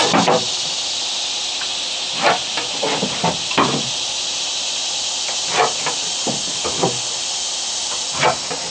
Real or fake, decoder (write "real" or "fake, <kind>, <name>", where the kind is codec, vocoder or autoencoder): real